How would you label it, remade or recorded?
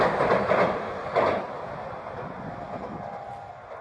recorded